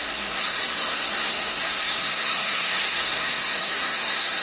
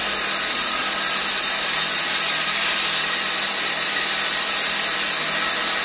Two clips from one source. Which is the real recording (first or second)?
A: second